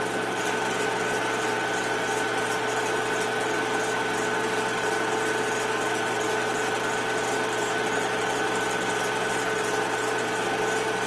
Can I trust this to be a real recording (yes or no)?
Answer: yes